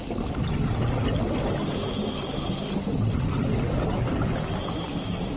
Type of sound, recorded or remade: recorded